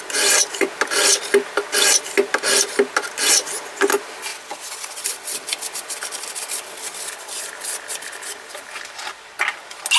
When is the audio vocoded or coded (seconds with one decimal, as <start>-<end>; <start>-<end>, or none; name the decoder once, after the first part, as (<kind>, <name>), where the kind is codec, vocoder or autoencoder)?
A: 4.3-8.7 (vocoder, BigVGAN v2)